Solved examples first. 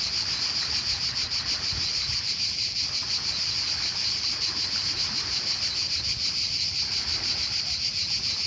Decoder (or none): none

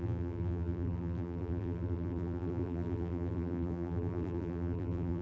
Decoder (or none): vocoder, BigVGAN v2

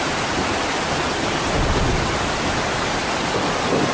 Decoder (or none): vocoder, BigVGAN v2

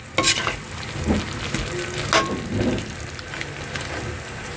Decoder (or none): none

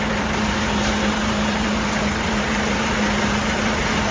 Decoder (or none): vocoder, BigVGAN v2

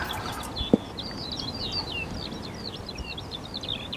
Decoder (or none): none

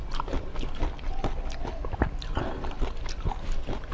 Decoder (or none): none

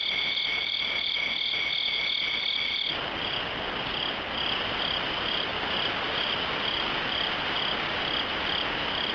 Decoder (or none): none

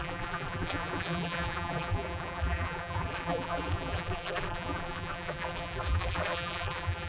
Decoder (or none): vocoder, BigVGAN v2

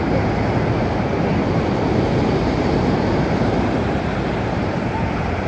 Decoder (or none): vocoder, BigVGAN v2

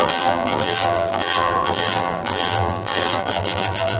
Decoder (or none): vocoder, BigVGAN v2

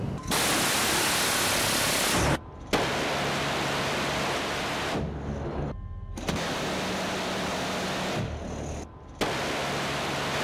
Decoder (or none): none